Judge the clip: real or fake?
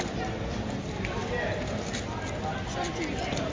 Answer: real